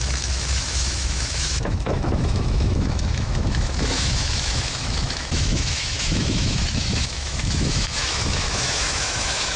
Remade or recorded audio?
remade